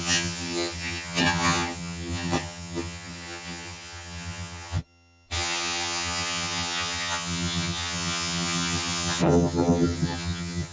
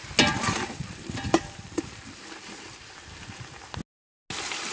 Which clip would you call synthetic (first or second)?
first